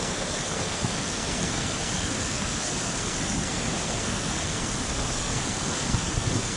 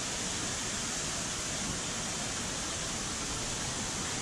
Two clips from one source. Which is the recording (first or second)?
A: second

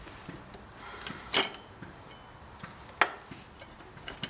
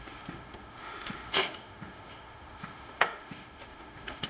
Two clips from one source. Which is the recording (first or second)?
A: first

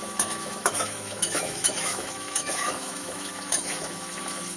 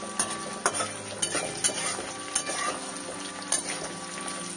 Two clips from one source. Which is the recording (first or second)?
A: second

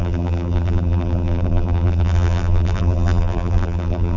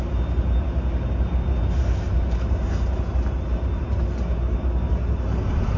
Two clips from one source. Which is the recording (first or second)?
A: second